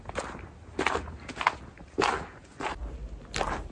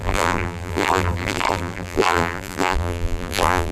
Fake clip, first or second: second